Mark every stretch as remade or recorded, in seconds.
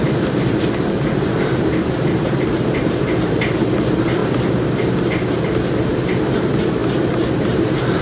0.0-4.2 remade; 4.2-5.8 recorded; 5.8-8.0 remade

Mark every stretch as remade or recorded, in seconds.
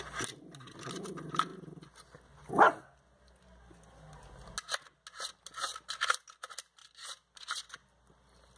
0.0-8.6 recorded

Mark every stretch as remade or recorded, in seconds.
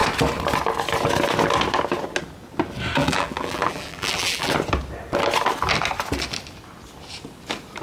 0.0-3.0 recorded; 3.0-4.5 remade; 4.5-7.8 recorded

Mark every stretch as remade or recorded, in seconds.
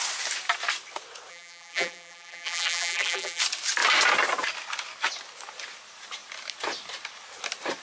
0.0-1.3 recorded; 1.3-3.4 remade; 3.4-7.8 recorded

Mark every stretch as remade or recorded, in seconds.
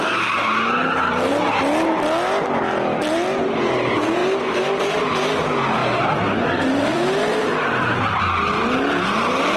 0.0-5.8 recorded; 5.8-8.2 remade; 8.2-9.6 recorded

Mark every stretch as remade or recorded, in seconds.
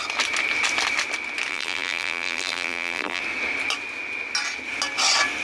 0.0-1.5 recorded; 1.5-3.2 remade; 3.2-5.4 recorded